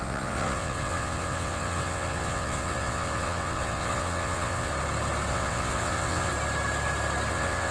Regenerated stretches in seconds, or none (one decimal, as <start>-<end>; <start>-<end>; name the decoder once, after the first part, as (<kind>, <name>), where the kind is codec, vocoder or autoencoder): 0.0-4.7 (vocoder, WaveNeXt); 5.3-6.3; 7.3-7.7